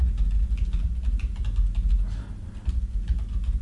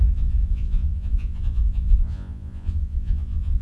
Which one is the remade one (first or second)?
second